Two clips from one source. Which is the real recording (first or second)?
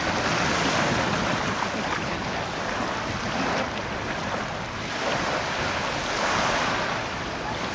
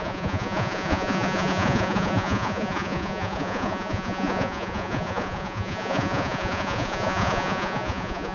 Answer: first